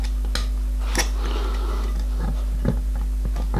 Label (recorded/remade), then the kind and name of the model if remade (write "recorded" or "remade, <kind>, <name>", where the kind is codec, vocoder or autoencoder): recorded